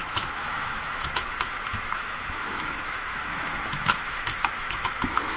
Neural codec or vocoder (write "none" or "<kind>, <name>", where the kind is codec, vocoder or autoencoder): autoencoder, DAC-VAE